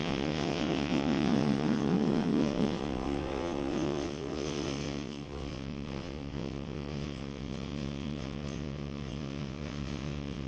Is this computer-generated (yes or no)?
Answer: yes